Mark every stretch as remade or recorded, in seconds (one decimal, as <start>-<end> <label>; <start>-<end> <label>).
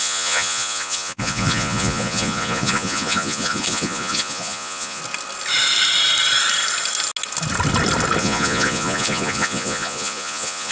0.0-5.0 remade; 5.0-8.2 recorded; 8.2-10.7 remade